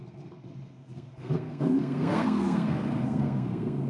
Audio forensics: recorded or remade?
remade